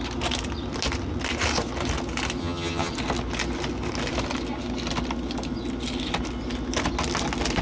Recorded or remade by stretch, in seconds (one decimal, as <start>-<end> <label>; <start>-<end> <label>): 0.0-2.4 recorded; 2.4-2.9 remade; 2.9-7.6 recorded